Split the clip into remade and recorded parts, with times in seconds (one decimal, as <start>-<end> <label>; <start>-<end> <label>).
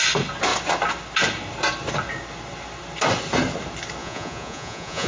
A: 0.0-4.0 recorded; 4.0-5.1 remade